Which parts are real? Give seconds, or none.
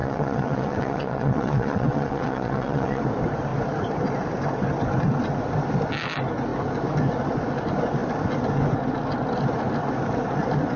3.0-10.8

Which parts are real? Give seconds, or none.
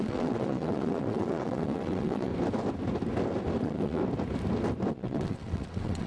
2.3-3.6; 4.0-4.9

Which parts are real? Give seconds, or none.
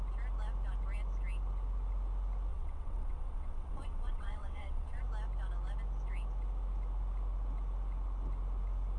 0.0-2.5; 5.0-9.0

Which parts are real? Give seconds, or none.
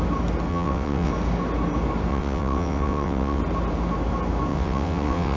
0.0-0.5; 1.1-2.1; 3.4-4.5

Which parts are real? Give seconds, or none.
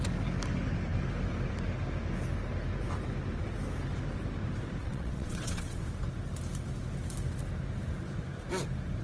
0.0-4.8; 5.8-9.0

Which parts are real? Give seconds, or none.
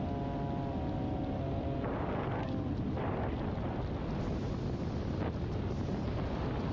0.0-6.7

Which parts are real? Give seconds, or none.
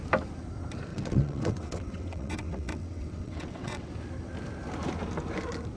0.0-0.9; 3.9-5.8